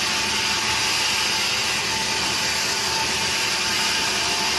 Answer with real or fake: real